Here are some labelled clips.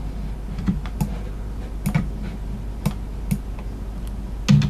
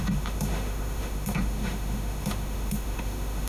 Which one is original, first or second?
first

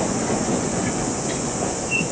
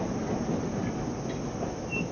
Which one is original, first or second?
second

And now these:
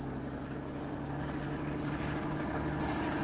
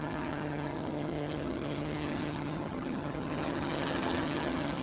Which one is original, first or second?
first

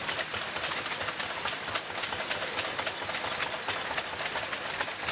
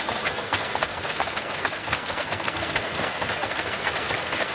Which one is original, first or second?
first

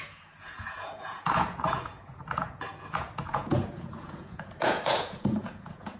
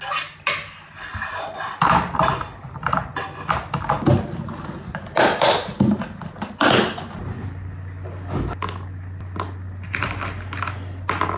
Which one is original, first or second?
second